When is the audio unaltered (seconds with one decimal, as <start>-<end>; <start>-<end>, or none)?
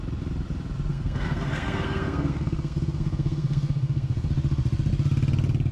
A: 0.0-0.9; 4.3-5.7